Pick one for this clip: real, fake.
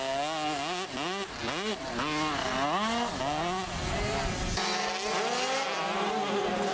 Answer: real